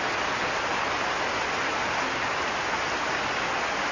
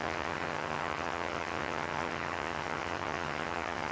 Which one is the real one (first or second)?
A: first